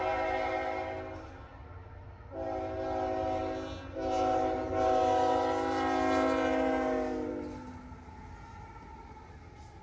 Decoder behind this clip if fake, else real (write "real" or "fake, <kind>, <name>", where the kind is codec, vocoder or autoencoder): real